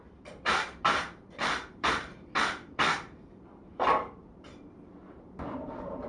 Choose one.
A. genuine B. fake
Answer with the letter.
B